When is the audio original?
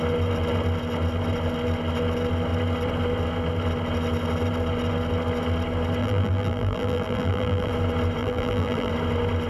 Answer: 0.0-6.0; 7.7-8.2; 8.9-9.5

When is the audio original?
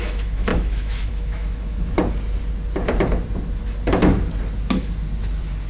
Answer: 2.0-5.7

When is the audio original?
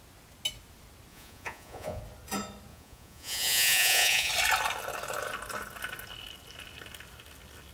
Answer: 0.0-1.1; 2.0-2.7; 4.3-7.7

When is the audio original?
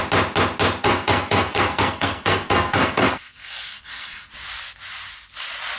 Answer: 0.0-0.8; 4.3-5.8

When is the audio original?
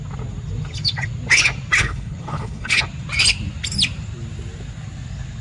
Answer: 0.0-1.8; 2.8-5.4